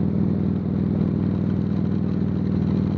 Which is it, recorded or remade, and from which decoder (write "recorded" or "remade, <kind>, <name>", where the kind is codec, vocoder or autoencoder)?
recorded